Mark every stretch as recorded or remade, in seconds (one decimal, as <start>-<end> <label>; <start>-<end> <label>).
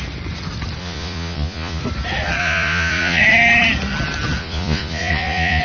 0.0-0.8 recorded; 0.8-1.8 remade; 1.8-2.4 recorded; 2.4-3.2 remade; 3.2-4.4 recorded; 4.4-5.6 remade